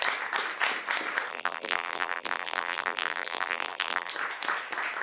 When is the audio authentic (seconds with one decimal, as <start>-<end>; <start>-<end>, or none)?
0.0-1.3; 4.1-5.0